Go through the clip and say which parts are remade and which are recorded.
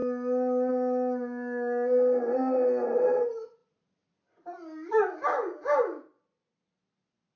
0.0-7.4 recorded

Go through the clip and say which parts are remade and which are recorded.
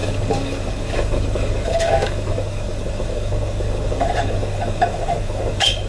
0.0-5.9 remade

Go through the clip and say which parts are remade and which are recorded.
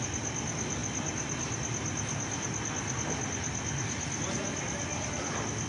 0.0-5.7 recorded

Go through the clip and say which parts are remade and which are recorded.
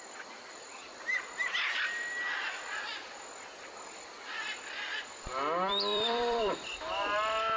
0.0-0.8 remade; 0.8-5.3 recorded; 5.3-6.7 remade; 6.7-7.6 recorded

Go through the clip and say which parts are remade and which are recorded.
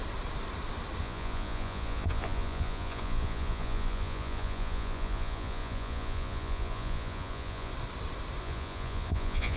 0.0-1.0 recorded; 1.0-7.7 remade; 7.7-8.4 recorded; 8.4-9.6 remade